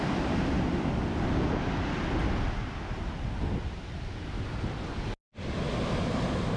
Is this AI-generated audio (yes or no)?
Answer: no